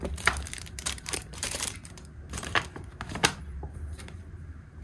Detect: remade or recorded remade